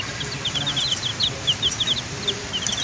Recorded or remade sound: recorded